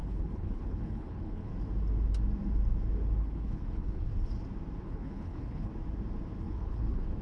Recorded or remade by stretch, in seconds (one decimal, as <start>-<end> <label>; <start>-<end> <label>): 0.0-1.5 remade; 1.5-3.2 recorded; 3.2-4.1 remade; 4.1-4.8 recorded; 4.8-5.7 remade; 5.7-6.4 recorded; 6.4-7.2 remade